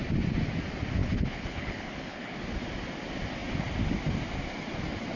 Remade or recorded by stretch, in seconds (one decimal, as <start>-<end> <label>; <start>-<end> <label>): 0.0-1.0 recorded; 1.0-2.4 remade; 2.4-5.2 recorded